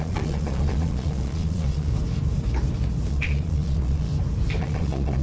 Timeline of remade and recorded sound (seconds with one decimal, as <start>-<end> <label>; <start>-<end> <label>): 0.0-1.9 remade; 1.9-3.1 recorded; 3.1-4.1 remade; 4.1-4.6 recorded; 4.6-5.2 remade